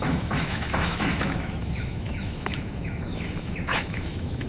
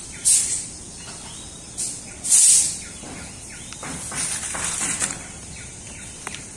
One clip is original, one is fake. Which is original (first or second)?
second